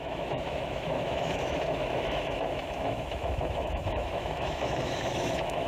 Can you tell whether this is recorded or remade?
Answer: remade